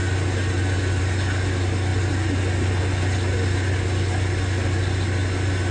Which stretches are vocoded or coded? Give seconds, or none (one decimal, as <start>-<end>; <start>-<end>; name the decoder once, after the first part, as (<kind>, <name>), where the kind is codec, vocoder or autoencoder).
none